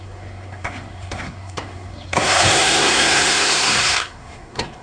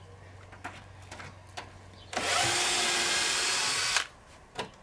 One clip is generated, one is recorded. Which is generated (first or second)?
first